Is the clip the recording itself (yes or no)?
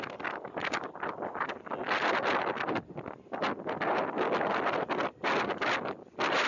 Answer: yes